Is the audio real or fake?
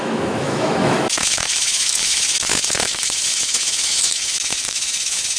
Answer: fake